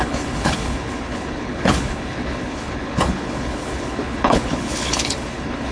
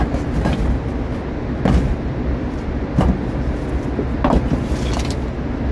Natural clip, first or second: second